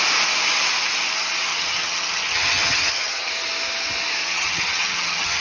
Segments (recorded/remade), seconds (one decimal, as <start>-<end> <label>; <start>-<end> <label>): 0.0-1.5 recorded; 1.5-3.3 remade; 3.3-4.2 recorded; 4.2-5.4 remade